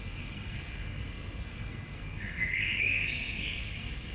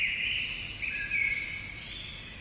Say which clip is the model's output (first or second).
first